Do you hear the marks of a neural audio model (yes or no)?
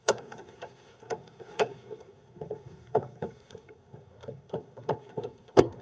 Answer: yes